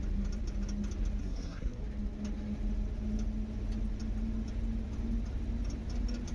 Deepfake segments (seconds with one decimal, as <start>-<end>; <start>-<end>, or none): 1.2-1.8